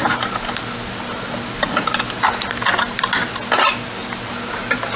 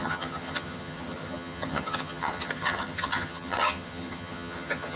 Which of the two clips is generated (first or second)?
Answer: second